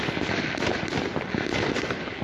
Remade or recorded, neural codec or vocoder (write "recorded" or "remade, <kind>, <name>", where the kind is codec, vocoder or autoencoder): recorded